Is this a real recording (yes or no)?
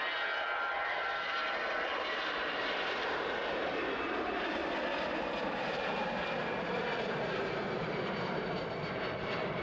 no